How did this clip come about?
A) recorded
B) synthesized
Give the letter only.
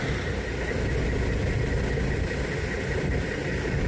A